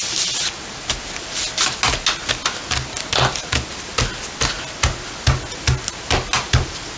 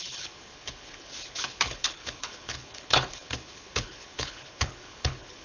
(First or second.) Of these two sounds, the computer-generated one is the second